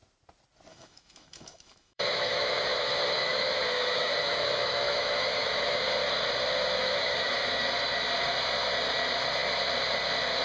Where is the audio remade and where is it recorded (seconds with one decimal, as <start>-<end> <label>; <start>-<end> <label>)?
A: 0.0-0.7 recorded; 0.7-5.8 remade; 5.8-6.8 recorded; 6.8-7.6 remade; 7.6-10.4 recorded